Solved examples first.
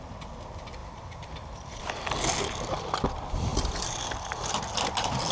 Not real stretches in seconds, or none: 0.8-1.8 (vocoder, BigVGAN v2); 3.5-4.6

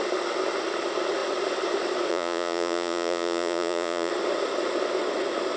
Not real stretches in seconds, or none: 2.1-4.1 (vocoder, Vocos)